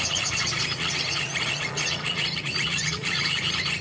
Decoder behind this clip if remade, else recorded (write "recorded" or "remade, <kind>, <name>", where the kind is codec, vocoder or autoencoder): remade, vocoder, Vocos